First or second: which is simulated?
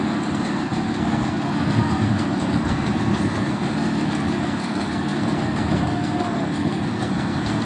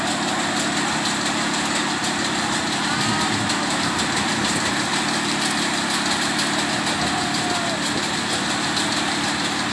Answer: first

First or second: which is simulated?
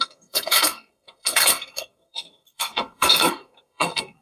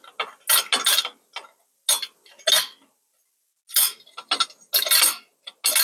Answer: first